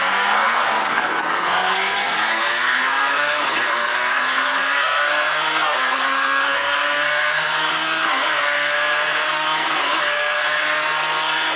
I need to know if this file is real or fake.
fake